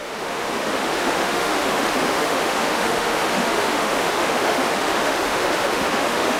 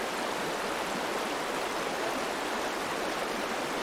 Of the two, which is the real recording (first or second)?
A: second